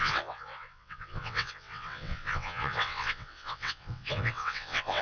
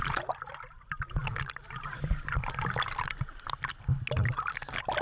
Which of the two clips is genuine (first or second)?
second